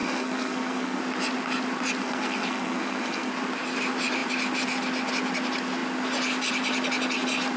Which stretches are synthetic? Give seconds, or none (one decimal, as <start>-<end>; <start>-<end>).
0.0-1.0; 2.0-3.3